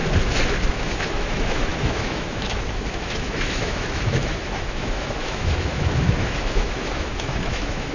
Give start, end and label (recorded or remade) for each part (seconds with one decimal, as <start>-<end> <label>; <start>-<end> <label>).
0.0-0.7 recorded; 0.7-7.9 remade